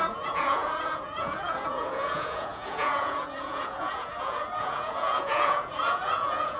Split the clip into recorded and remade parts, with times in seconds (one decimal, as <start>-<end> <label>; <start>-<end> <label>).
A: 0.0-6.6 remade